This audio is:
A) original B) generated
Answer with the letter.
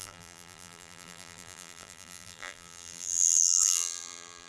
B